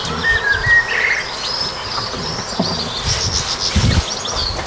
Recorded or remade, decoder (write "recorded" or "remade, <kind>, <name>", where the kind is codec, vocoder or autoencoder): recorded